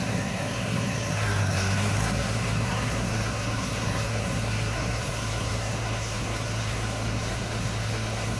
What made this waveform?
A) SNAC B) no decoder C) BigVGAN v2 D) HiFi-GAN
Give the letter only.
A